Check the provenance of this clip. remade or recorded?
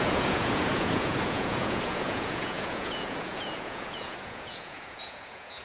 remade